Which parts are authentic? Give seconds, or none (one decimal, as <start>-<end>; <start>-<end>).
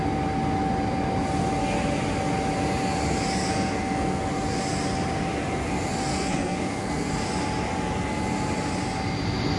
0.0-3.5; 4.2-6.1; 7.1-9.6